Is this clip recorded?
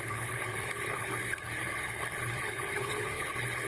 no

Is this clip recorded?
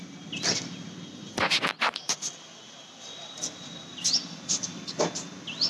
yes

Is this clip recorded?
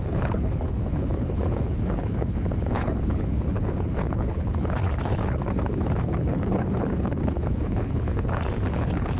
no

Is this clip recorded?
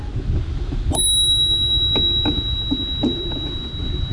yes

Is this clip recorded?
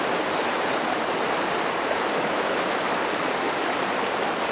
yes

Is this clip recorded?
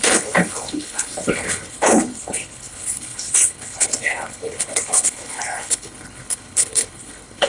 no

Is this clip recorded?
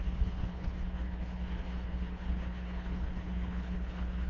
no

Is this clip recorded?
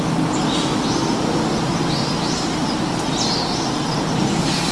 yes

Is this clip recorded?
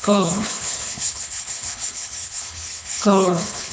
no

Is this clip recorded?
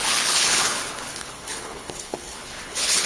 no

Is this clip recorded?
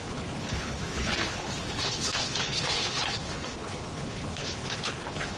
no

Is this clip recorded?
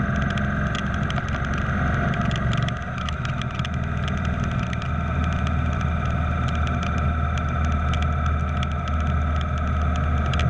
yes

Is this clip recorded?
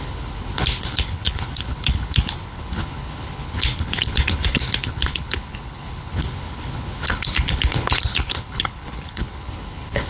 no